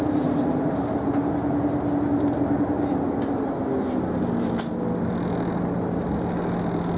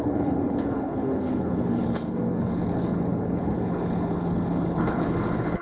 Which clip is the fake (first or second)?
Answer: second